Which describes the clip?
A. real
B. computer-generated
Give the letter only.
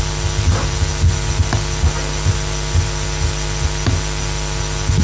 A